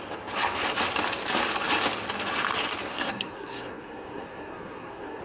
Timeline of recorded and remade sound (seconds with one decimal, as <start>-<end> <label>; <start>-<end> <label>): 0.0-2.9 recorded; 2.9-5.2 remade